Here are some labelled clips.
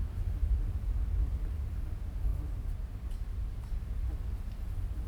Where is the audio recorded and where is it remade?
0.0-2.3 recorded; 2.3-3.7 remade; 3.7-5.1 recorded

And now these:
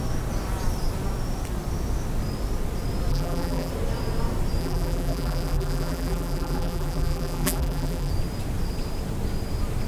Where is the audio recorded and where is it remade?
0.0-3.1 recorded; 3.1-3.7 remade; 3.7-4.6 recorded; 4.6-8.1 remade; 8.1-9.9 recorded

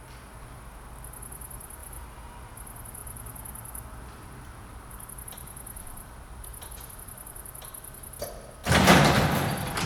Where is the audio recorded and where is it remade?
0.0-1.8 recorded; 1.8-2.5 remade; 2.5-3.0 recorded; 3.0-6.1 remade; 6.1-6.5 recorded; 6.5-8.0 remade; 8.0-9.9 recorded